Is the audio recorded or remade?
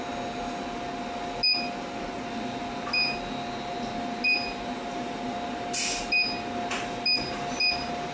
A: recorded